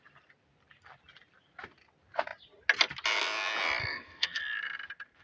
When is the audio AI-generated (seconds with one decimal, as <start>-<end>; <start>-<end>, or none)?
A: 3.8-4.4